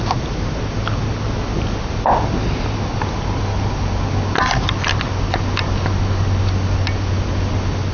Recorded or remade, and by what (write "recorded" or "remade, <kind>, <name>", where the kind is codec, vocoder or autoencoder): recorded